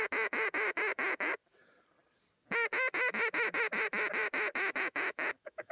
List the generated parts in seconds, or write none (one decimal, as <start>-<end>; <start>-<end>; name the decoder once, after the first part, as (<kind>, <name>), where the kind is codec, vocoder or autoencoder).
0.0-1.4 (autoencoder, DAC-VAE); 4.8-5.7

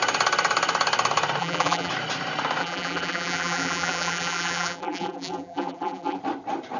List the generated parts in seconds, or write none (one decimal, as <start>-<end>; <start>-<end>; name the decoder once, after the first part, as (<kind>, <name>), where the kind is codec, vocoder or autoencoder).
1.4-1.9 (vocoder, BigVGAN v2); 2.6-6.2

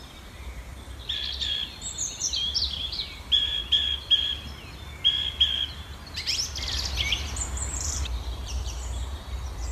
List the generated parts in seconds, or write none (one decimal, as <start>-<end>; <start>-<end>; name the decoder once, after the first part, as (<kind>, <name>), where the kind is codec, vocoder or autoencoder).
0.0-0.7 (vocoder, BigVGAN v2); 2.2-3.6; 7.7-9.7

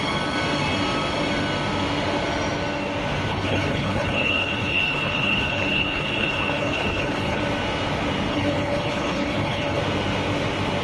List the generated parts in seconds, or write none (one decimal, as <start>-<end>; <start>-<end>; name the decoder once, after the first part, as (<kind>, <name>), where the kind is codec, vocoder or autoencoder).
3.3-7.4 (codec, HILCodec); 8.3-9.8

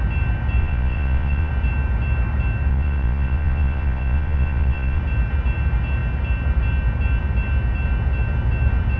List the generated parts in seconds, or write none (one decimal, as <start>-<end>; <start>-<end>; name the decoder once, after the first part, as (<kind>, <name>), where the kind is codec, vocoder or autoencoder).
0.6-1.5 (vocoder, Vocos); 2.7-5.0

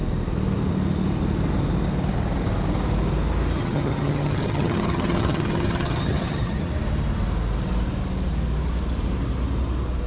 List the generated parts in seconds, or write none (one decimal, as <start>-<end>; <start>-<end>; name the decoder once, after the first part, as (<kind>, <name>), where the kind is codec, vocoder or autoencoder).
3.6-6.7 (vocoder, HiFi-GAN)